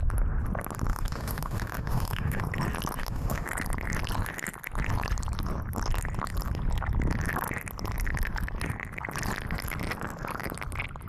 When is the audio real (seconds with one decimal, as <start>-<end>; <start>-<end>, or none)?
0.0-0.9; 2.4-3.0; 3.5-11.1